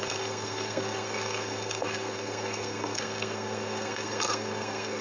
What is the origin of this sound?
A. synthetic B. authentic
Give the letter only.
A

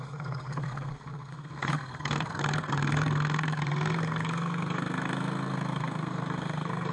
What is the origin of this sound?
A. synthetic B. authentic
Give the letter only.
A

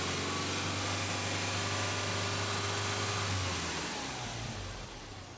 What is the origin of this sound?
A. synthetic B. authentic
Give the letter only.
B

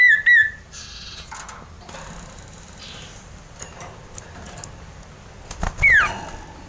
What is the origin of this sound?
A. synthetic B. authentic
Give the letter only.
B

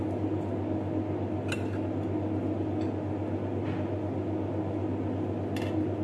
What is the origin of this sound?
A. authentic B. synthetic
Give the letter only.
A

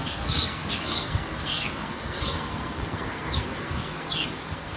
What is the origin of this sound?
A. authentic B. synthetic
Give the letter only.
B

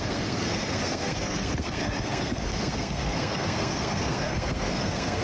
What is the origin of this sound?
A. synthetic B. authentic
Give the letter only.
A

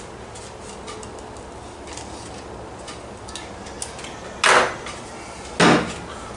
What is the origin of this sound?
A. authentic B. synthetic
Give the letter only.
A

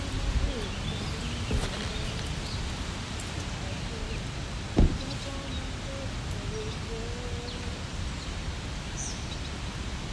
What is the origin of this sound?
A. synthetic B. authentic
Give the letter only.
B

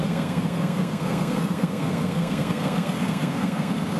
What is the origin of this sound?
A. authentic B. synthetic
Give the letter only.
B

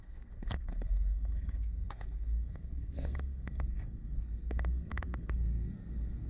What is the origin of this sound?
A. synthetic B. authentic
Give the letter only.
A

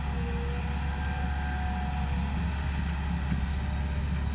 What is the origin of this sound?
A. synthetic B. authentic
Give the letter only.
B